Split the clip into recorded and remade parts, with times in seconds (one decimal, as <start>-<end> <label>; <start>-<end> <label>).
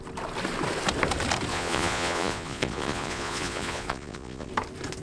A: 0.0-1.5 recorded; 1.5-4.5 remade; 4.5-5.0 recorded